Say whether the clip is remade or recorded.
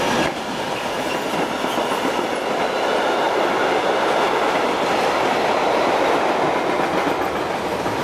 recorded